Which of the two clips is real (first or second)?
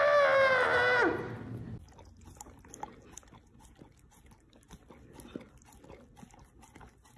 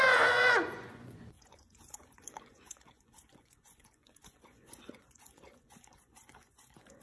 first